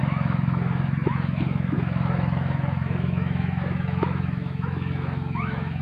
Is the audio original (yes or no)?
no